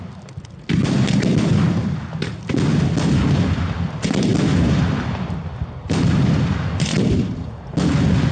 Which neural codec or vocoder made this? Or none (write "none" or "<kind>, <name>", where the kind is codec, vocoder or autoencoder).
none